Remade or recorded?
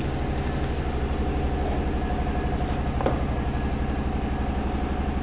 recorded